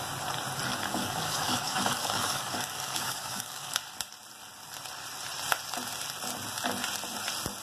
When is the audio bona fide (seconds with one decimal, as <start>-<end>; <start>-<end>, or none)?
0.0-0.7; 3.8-7.6